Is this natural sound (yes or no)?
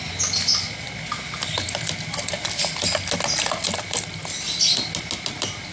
yes